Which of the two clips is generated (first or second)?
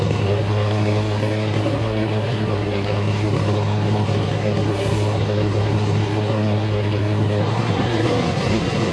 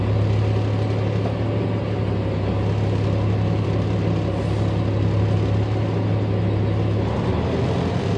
first